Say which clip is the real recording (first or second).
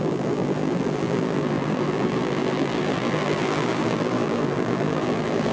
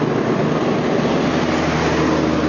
second